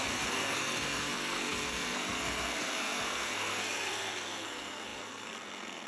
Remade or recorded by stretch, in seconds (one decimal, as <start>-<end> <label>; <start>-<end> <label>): 0.0-5.9 remade